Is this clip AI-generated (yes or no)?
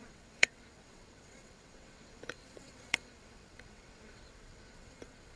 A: yes